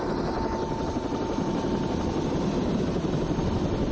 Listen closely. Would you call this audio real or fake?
real